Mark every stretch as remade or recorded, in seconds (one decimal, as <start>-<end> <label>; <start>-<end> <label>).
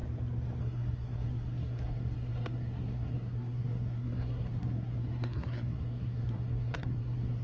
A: 0.0-0.6 recorded; 0.6-7.4 remade